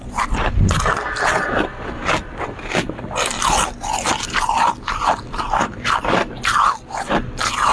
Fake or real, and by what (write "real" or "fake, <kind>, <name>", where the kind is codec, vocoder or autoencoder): fake, vocoder, BigVGAN v2